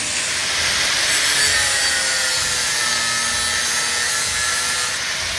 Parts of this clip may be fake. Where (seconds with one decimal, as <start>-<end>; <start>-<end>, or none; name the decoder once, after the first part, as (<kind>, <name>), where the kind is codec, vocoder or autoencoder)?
none